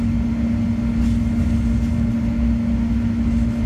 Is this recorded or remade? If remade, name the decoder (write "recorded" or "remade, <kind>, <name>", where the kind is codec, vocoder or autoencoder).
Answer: recorded